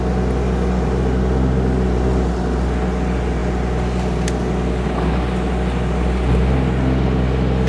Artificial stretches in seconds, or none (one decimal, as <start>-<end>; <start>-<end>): none